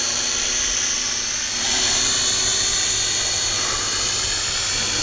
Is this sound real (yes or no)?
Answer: yes